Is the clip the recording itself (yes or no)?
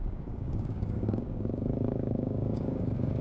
no